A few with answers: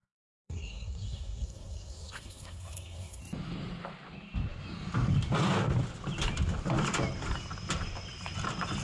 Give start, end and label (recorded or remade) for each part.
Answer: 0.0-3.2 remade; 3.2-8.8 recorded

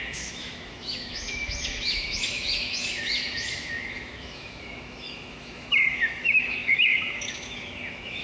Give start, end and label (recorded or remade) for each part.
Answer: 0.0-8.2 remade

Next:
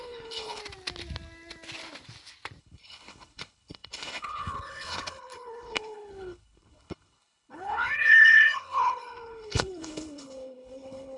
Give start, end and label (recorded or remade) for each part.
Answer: 0.0-0.6 remade; 0.6-2.6 recorded; 2.6-11.2 remade

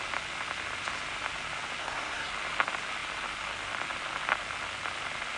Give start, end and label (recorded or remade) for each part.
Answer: 0.0-1.8 recorded; 1.8-2.3 remade; 2.3-5.4 recorded

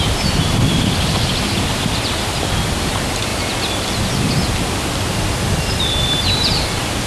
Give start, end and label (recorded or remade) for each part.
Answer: 0.0-3.3 remade; 3.3-5.7 recorded; 5.7-7.1 remade

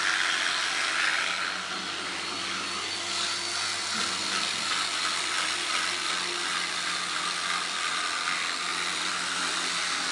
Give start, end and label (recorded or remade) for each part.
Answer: 0.0-10.1 recorded

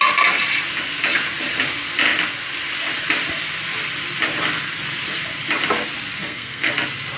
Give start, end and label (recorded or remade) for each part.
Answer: 0.0-6.2 recorded; 6.2-6.7 remade; 6.7-7.2 recorded

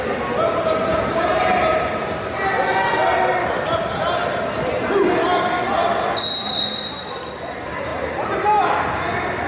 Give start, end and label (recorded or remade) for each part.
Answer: 0.0-9.5 recorded